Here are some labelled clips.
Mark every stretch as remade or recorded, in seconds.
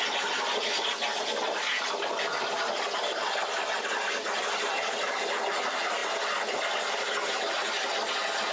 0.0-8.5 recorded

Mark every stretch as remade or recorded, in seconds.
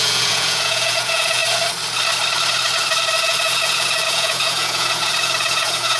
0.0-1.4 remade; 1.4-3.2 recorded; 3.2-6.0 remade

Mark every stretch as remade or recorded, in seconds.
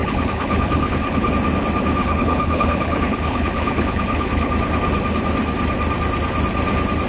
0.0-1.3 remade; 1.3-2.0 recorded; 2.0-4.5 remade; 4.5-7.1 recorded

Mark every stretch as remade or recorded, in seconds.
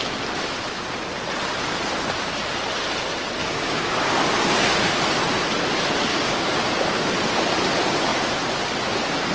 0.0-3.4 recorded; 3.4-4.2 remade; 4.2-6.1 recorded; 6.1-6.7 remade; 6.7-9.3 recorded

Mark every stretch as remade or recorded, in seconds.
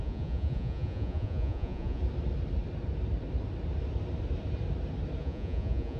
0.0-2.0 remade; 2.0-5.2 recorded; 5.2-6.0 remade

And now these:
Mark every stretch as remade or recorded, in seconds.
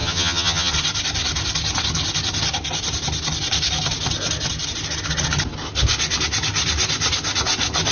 0.0-0.7 remade; 0.7-7.9 recorded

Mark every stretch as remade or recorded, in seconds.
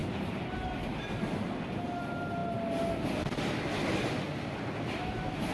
0.0-5.5 recorded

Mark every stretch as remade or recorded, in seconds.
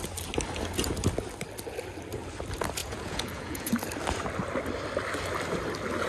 0.0-2.8 recorded; 2.8-3.7 remade; 3.7-6.1 recorded